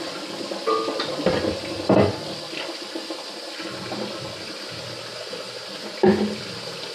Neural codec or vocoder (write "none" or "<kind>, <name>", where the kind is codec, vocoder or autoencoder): vocoder, BigVGAN v2